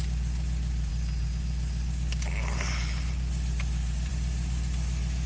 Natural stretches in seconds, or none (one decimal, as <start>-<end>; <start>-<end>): 0.0-5.3